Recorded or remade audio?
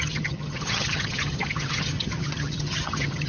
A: remade